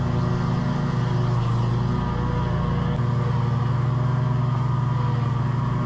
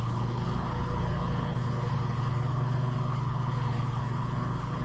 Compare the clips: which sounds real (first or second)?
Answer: first